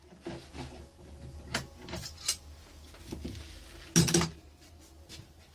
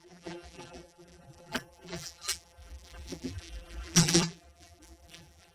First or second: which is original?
first